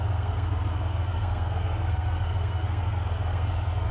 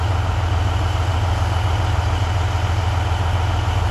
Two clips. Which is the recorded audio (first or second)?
second